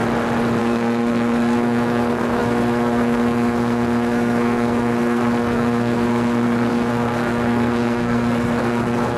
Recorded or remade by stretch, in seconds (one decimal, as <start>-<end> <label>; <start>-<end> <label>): 0.0-0.6 recorded; 0.6-9.2 remade